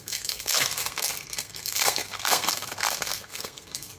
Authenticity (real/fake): fake